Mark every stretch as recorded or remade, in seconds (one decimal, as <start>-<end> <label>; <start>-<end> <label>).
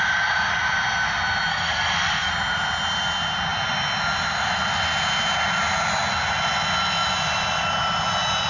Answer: 0.0-1.5 recorded; 1.5-2.3 remade; 2.3-8.5 recorded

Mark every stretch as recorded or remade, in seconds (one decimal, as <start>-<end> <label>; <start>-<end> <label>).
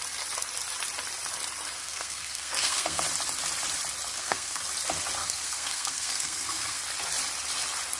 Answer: 0.0-1.8 recorded; 1.8-3.0 remade; 3.0-4.1 recorded; 4.1-4.6 remade; 4.6-5.2 recorded; 5.2-6.8 remade; 6.8-8.0 recorded